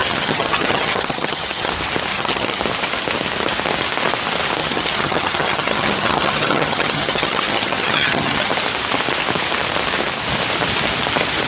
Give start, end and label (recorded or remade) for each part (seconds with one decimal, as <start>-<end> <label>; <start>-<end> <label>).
0.0-1.7 remade; 1.7-2.1 recorded; 2.1-2.6 remade; 2.6-4.6 recorded; 4.6-8.5 remade; 8.5-11.5 recorded